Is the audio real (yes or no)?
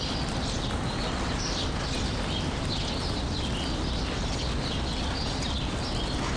yes